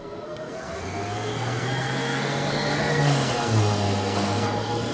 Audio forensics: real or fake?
fake